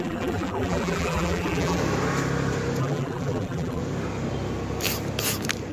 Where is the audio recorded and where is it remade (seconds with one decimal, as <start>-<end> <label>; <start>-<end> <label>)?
0.0-1.8 remade; 1.8-2.8 recorded; 2.8-3.8 remade; 3.8-5.7 recorded